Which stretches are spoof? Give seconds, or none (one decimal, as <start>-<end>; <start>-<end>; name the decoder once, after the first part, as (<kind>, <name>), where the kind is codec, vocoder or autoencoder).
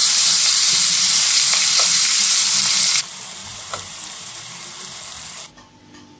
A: 0.0-2.3 (vocoder, BigVGAN v2); 3.4-4.5